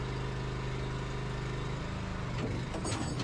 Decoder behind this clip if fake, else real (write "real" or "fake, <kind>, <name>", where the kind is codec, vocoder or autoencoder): real